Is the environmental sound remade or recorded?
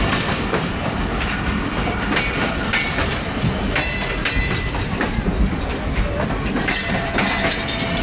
recorded